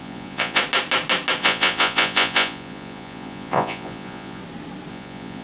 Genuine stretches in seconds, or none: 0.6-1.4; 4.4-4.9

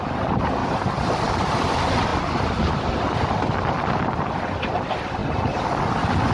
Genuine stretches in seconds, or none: 0.0-6.3

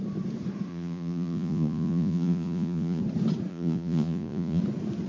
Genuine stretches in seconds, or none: 0.0-0.7; 3.0-3.5; 4.6-5.1

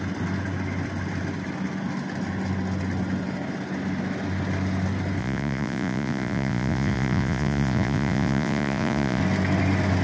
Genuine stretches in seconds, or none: 0.0-5.2; 9.2-10.0

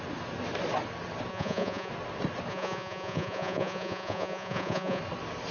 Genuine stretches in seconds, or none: 0.0-1.3; 1.9-2.5; 5.0-5.5

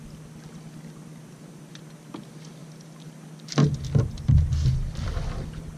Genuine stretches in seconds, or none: 0.0-5.8

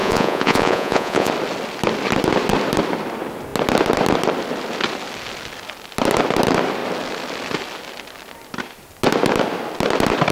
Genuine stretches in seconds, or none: 1.3-10.3

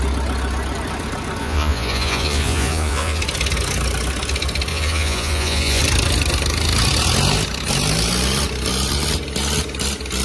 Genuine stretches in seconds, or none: 0.0-1.4; 3.2-4.7; 5.8-10.2